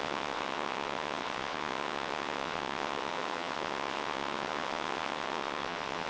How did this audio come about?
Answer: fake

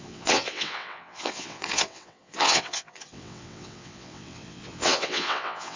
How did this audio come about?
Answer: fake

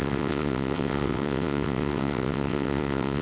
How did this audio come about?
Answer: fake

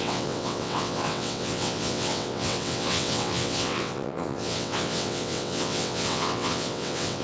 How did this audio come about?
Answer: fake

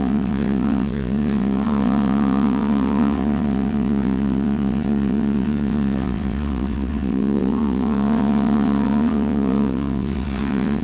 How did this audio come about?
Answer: fake